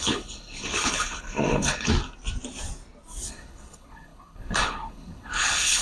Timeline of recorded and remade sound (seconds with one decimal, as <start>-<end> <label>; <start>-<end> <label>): 0.0-1.9 remade; 1.9-3.3 recorded; 3.3-5.8 remade